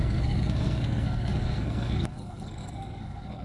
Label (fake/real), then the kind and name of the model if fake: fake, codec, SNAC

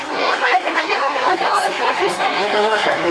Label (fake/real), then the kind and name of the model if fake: fake, codec, SNAC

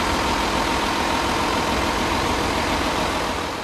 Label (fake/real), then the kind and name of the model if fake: real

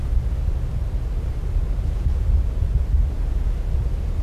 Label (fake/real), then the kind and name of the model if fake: real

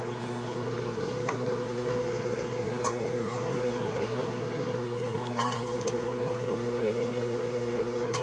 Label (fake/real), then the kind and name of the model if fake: fake, codec, SNAC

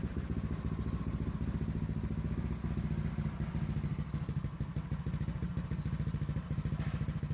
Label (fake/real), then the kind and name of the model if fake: real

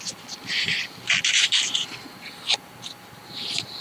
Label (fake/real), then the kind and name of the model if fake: real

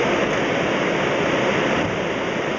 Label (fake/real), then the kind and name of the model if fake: real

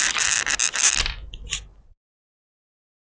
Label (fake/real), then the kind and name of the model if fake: real